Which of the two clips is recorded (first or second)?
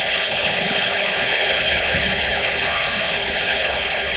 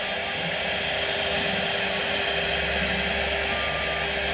second